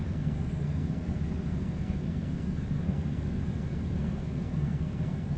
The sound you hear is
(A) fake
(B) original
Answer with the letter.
A